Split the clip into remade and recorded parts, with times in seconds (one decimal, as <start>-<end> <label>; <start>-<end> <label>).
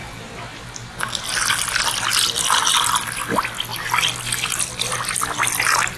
0.0-6.0 recorded